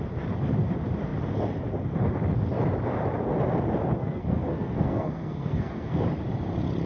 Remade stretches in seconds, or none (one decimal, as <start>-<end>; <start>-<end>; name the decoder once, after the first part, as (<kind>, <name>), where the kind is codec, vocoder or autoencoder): 4.0-6.0 (codec, SNAC)